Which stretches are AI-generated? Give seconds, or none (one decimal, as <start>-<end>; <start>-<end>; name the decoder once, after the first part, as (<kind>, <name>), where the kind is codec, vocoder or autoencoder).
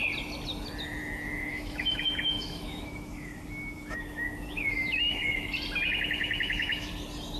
1.0-5.4 (autoencoder, DAC-VAE); 6.2-6.9